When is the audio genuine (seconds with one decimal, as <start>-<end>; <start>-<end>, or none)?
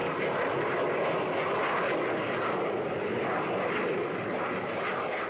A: 0.0-5.3